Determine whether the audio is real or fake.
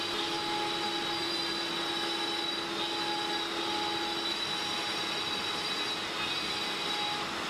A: real